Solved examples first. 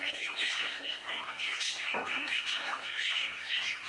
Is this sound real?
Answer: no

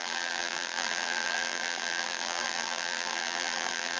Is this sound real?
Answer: no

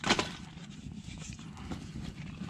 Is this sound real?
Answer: yes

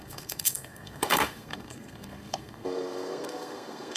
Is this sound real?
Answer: no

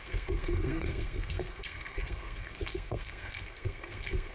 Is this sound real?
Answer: no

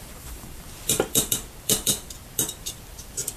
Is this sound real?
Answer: no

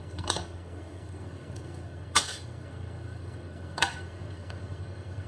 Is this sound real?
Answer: no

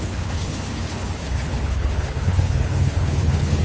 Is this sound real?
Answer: no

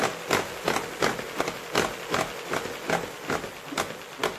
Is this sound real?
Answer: yes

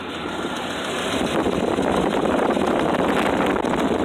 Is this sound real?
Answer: yes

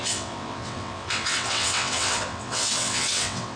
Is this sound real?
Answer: no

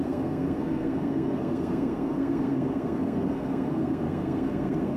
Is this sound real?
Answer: no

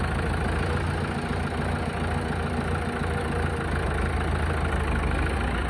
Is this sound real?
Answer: yes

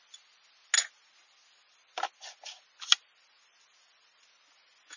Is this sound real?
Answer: yes